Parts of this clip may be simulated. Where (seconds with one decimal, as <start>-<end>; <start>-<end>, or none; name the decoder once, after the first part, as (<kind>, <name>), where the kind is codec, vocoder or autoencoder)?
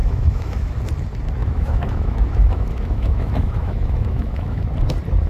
0.0-0.8 (autoencoder, DAC-VAE); 1.4-4.6